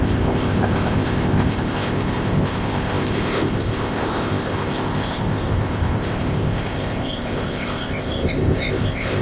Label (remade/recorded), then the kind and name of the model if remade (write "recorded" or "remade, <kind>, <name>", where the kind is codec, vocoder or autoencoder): remade, codec, ZipCodec